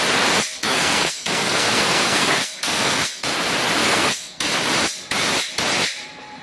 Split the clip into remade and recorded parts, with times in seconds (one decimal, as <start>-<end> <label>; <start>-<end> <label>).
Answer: 0.0-0.6 recorded; 0.6-3.4 remade; 3.4-3.8 recorded; 3.8-4.5 remade; 4.5-6.4 recorded